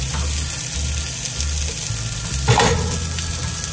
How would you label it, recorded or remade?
recorded